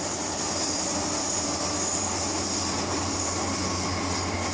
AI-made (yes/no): no